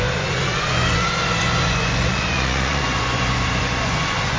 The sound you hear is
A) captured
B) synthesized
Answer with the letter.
B